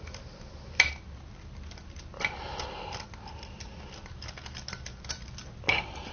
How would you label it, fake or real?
real